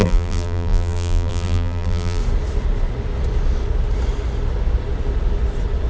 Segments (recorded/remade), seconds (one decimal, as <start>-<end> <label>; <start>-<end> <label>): 0.0-2.2 remade; 2.2-5.9 recorded